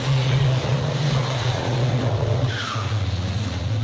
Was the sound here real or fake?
fake